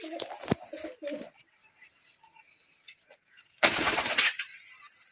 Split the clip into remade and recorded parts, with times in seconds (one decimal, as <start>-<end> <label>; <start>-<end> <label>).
0.0-1.6 recorded; 1.6-4.6 remade; 4.6-5.1 recorded